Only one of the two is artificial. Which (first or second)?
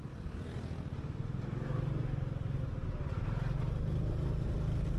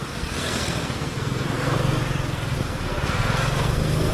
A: second